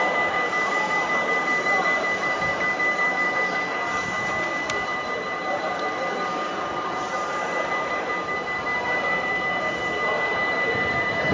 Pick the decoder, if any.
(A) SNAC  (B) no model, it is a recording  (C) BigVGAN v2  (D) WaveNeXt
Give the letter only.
C